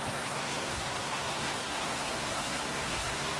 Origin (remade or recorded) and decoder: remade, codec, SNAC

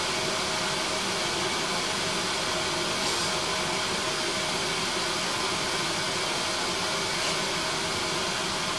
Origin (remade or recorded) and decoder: recorded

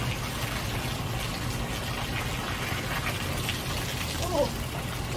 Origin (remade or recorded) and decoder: recorded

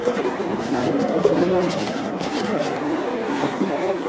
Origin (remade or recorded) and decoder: remade, codec, SNAC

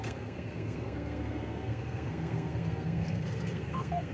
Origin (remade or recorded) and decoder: remade, codec, SNAC